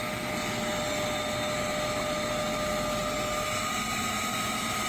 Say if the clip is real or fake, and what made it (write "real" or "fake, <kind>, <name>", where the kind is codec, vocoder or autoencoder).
real